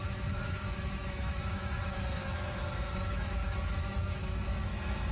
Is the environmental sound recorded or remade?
remade